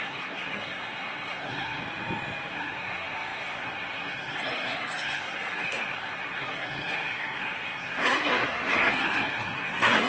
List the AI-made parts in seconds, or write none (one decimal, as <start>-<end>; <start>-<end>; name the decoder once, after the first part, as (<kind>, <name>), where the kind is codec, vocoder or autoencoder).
0.0-1.8 (codec, SNAC); 2.5-10.1

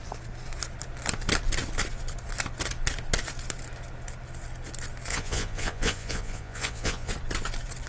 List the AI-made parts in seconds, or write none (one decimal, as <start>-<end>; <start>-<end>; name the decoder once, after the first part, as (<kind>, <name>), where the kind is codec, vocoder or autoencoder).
5.1-7.1 (vocoder, Vocos)

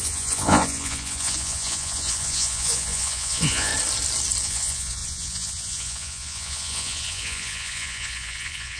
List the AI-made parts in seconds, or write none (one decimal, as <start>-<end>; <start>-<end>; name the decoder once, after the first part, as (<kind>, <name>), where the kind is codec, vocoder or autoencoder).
0.0-3.7 (vocoder, Vocos); 4.4-8.8